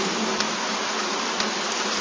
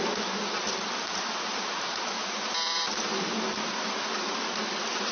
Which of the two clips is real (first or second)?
first